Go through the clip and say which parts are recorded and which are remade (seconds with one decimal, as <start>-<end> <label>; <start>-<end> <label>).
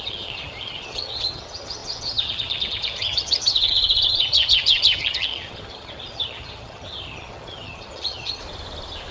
0.0-8.4 remade; 8.4-9.1 recorded